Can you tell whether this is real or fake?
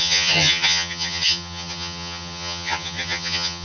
fake